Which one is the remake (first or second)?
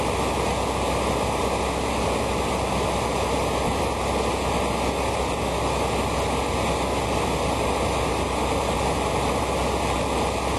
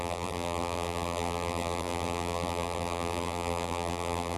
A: second